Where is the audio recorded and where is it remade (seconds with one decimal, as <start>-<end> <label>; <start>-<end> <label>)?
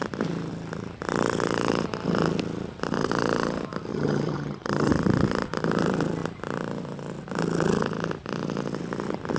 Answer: 0.0-3.9 recorded; 3.9-4.9 remade; 4.9-9.4 recorded